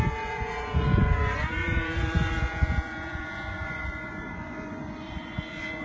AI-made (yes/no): yes